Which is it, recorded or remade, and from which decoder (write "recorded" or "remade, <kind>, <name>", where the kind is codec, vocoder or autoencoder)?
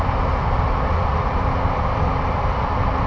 recorded